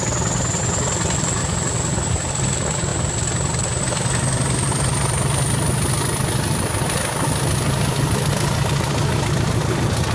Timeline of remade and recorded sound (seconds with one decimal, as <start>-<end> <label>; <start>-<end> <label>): 0.0-1.4 recorded; 1.4-2.3 remade; 2.3-10.1 recorded

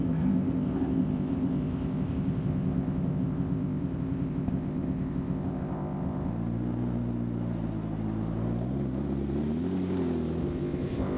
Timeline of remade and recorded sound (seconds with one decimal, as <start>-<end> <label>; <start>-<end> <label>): 0.0-6.3 remade; 6.3-10.4 recorded; 10.4-11.2 remade